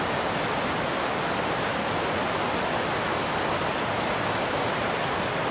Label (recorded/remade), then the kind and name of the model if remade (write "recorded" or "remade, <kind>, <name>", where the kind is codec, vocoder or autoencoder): recorded